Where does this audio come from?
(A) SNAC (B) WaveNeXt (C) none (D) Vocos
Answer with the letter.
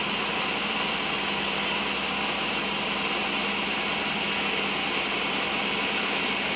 C